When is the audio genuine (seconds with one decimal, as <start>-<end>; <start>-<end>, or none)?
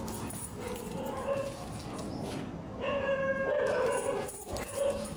0.0-5.2